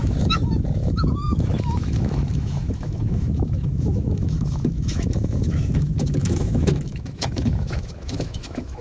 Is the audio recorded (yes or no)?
no